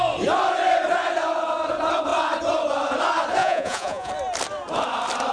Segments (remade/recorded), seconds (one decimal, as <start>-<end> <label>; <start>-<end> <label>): 0.0-3.4 recorded; 3.4-4.1 remade; 4.1-5.3 recorded